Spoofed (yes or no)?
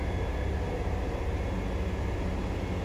no